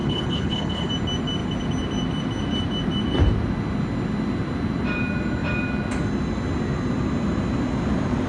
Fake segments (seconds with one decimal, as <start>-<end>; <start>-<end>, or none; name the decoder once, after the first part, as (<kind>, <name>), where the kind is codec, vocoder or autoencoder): 0.0-0.9 (codec, HILCodec)